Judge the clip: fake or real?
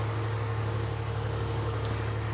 fake